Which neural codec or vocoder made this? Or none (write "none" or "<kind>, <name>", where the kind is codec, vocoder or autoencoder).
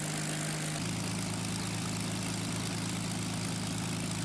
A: none